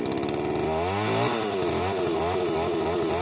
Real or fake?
real